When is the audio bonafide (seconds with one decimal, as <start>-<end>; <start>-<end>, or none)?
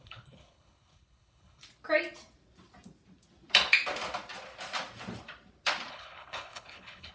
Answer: 1.6-5.9